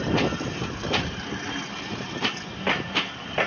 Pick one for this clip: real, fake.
real